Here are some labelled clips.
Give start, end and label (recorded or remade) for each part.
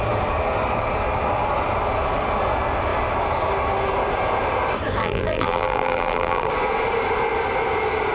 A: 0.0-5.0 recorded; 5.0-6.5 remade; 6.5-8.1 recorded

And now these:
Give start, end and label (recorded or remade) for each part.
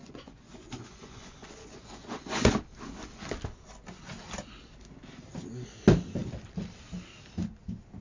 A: 0.0-2.5 remade; 2.5-8.0 recorded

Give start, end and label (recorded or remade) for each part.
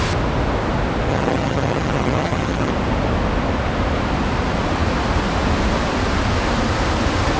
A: 0.0-1.1 recorded; 1.1-2.7 remade; 2.7-7.4 recorded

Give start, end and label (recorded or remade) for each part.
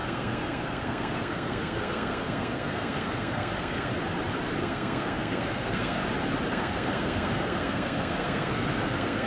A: 0.0-3.9 remade; 3.9-4.6 recorded; 4.6-6.0 remade; 6.0-6.5 recorded; 6.5-9.3 remade